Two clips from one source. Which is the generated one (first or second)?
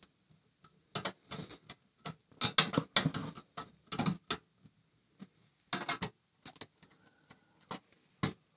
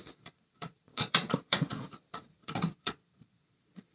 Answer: second